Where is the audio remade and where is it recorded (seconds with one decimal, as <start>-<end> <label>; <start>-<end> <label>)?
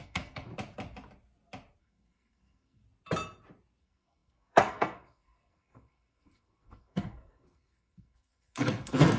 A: 0.0-0.5 remade; 0.5-1.8 recorded; 1.8-2.8 remade; 2.8-3.8 recorded; 3.8-9.2 remade